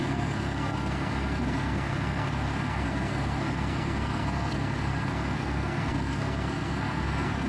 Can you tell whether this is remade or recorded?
remade